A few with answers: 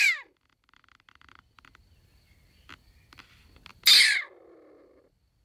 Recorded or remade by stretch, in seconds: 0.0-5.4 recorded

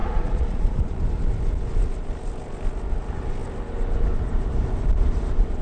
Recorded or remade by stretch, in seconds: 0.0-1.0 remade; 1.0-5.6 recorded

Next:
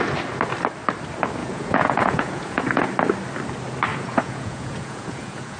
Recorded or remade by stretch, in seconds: 0.0-1.4 recorded; 1.4-2.9 remade; 2.9-3.9 recorded; 3.9-5.6 remade